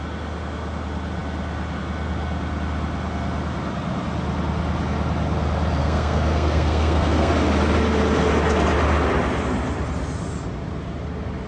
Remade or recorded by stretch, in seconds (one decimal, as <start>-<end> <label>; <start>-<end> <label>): 0.0-5.8 recorded; 5.8-7.3 remade; 7.3-11.5 recorded

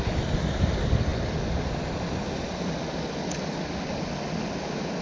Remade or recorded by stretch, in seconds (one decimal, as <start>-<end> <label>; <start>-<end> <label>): 0.0-5.0 recorded

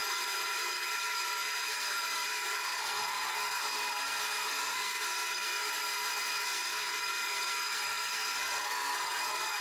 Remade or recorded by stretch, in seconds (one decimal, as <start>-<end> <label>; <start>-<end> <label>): 0.0-9.6 remade

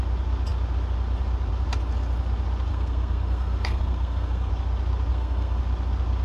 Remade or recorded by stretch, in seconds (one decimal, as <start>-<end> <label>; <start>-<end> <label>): 0.0-2.7 recorded; 2.7-4.5 remade; 4.5-5.1 recorded; 5.1-5.6 remade; 5.6-6.2 recorded

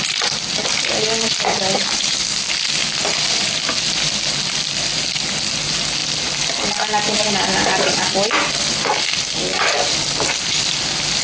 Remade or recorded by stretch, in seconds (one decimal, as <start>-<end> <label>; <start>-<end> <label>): 0.0-11.2 recorded

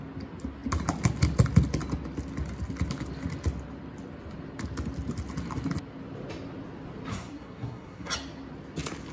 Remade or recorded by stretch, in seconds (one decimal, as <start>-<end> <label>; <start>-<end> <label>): 0.0-7.1 recorded; 7.1-8.1 remade; 8.1-9.1 recorded